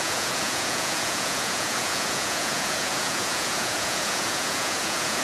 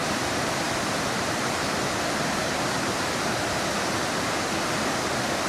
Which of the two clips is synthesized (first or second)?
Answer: first